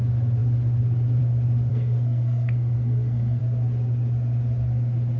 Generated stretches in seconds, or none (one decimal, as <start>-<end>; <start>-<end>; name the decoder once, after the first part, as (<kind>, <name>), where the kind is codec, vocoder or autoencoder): 1.7-3.4 (codec, SNAC)